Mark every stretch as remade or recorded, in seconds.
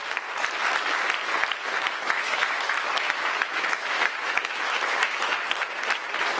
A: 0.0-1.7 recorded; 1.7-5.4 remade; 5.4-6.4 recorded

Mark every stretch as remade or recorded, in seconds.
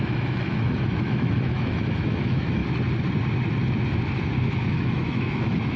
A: 0.0-2.6 remade; 2.6-4.5 recorded; 4.5-5.8 remade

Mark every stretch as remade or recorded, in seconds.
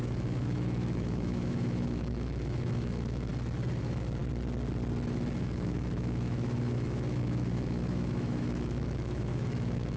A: 0.0-3.3 remade; 3.3-3.8 recorded; 3.8-4.2 remade; 4.2-5.4 recorded; 5.4-10.0 remade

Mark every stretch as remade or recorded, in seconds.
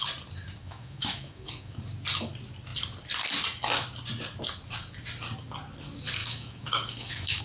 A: 0.0-0.6 recorded; 0.6-1.8 remade; 1.8-6.2 recorded; 6.2-7.4 remade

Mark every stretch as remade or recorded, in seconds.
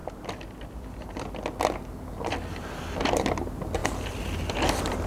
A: 0.0-5.1 recorded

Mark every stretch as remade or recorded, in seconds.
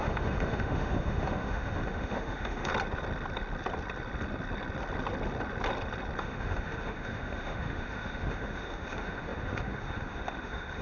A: 0.0-2.7 remade; 2.7-6.2 recorded; 6.2-10.8 remade